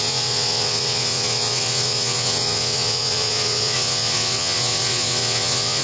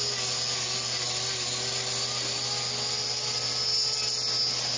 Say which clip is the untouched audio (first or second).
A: second